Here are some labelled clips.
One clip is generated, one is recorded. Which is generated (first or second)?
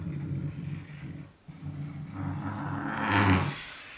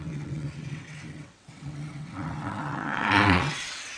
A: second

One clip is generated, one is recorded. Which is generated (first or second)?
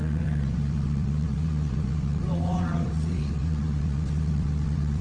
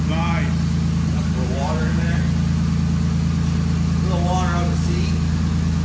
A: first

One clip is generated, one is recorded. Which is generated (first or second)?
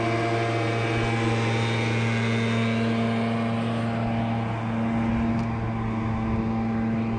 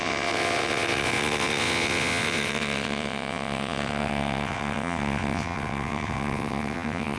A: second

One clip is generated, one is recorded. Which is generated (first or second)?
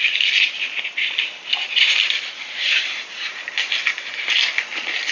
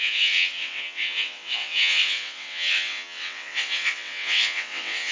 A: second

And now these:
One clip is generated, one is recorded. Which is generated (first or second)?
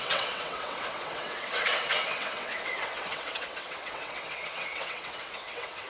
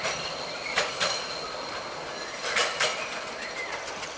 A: first